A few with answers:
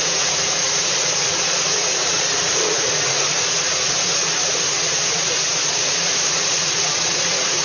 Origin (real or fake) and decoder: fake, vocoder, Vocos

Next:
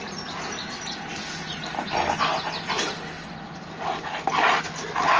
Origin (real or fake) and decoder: real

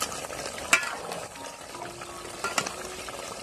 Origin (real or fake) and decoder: fake, vocoder, BigVGAN v2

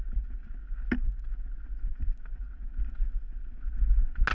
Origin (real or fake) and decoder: real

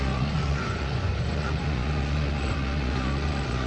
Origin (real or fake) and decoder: fake, vocoder, Vocos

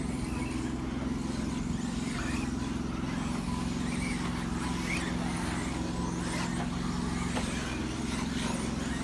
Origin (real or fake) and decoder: real